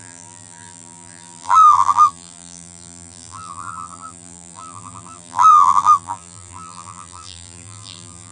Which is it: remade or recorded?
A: remade